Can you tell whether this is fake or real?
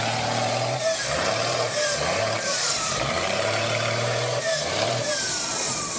fake